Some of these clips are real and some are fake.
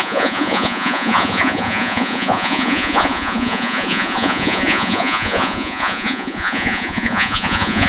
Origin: fake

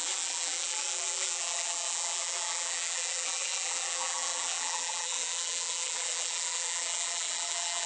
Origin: fake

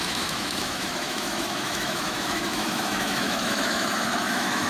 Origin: fake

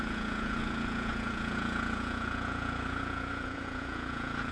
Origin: fake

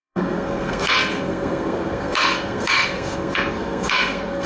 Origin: fake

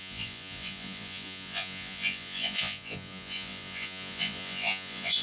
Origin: fake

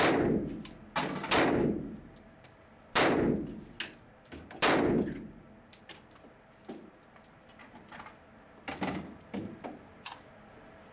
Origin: real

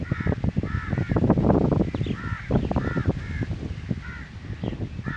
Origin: real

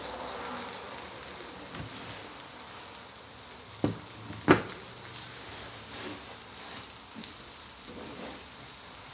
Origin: real